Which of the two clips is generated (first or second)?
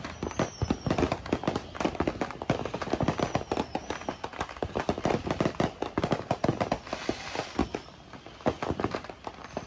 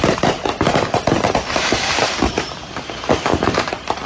second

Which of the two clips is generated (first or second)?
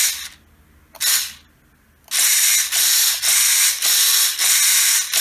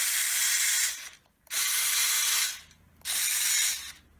second